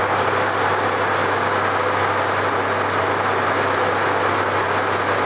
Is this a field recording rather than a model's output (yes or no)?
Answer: yes